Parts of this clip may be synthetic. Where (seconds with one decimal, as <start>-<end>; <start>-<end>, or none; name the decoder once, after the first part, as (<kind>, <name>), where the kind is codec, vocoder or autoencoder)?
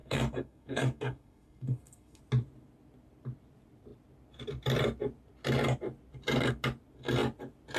0.0-2.2 (codec, SNAC)